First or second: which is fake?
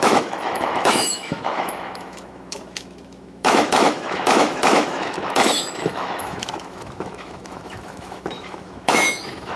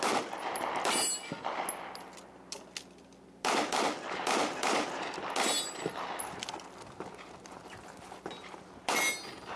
first